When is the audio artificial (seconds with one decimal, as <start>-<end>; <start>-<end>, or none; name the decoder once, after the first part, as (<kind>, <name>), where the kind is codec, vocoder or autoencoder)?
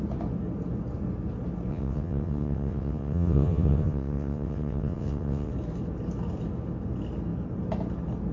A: 1.7-5.5 (vocoder, WaveNeXt)